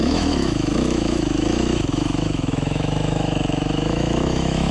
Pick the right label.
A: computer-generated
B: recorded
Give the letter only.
A